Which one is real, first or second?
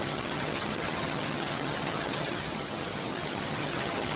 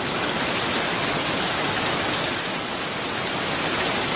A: second